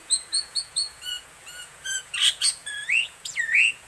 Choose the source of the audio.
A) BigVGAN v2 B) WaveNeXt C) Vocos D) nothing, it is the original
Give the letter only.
C